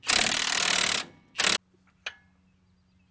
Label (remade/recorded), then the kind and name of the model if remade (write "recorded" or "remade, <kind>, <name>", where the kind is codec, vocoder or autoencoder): recorded